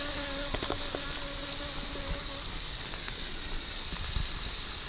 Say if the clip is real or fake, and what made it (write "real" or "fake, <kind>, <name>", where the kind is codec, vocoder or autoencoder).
real